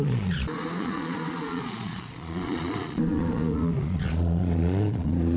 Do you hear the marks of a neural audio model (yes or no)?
yes